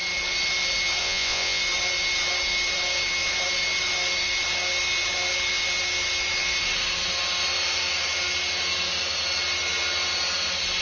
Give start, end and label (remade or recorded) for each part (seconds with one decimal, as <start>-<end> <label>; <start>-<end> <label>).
0.0-1.0 recorded; 1.0-1.6 remade; 1.6-10.8 recorded